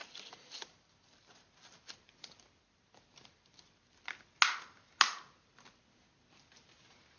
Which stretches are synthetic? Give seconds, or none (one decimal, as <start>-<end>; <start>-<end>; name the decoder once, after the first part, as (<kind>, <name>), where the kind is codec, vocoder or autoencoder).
none